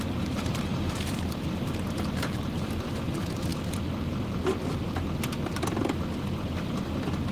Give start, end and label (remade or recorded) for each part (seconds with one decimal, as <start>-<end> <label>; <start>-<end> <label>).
0.0-3.5 remade; 3.5-7.3 recorded